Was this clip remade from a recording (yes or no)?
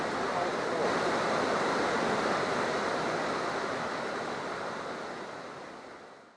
no